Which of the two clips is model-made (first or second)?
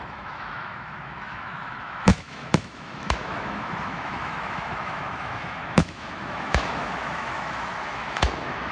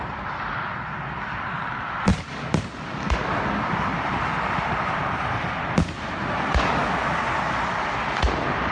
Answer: first